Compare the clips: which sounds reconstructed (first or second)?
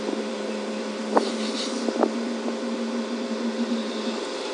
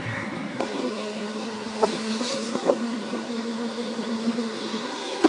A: second